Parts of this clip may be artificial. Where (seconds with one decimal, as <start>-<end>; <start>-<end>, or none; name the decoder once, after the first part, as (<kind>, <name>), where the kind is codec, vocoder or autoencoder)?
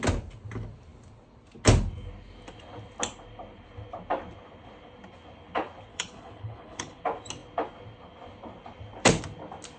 5.9-7.0 (codec, HILCodec)